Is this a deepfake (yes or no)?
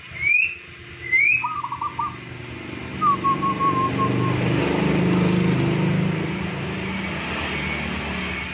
no